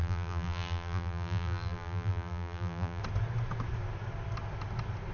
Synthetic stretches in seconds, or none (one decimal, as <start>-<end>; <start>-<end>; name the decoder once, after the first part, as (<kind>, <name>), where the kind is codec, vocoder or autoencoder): 0.0-3.0 (vocoder, BigVGAN v2)